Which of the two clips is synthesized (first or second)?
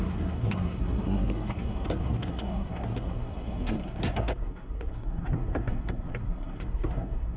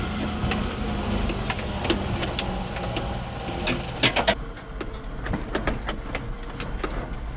first